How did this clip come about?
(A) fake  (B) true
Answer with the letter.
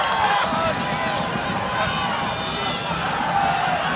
B